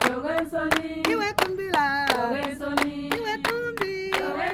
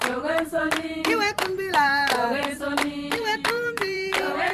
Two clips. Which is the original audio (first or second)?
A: first